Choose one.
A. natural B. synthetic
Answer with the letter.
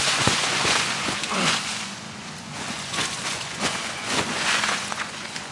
B